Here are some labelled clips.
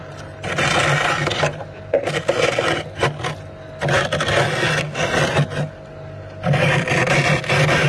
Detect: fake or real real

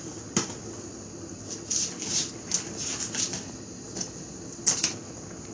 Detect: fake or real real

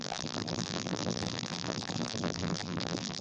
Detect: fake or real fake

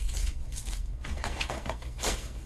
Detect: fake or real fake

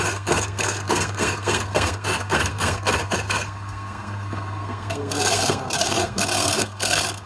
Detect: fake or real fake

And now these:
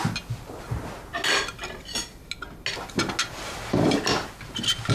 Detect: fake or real real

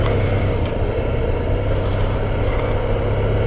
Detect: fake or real real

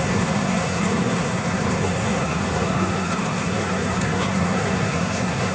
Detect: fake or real fake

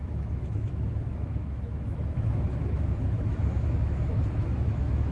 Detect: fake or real fake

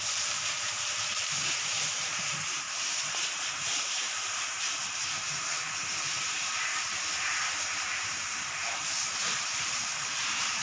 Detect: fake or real fake